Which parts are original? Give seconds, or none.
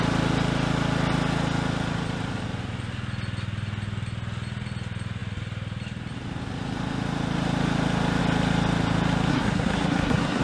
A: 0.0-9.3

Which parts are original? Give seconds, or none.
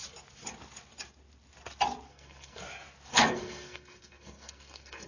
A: 0.0-2.1; 2.6-3.1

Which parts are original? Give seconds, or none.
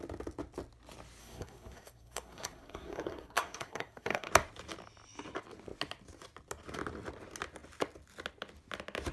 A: 0.0-1.2; 4.3-9.1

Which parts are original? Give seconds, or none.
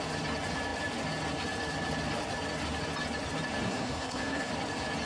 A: 0.0-3.6; 4.5-5.1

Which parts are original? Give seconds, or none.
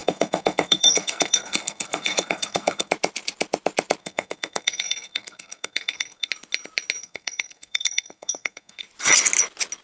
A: 2.9-4.0; 6.3-7.0; 8.8-9.8